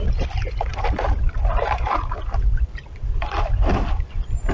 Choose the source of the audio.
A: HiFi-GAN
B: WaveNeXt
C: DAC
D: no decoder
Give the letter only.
D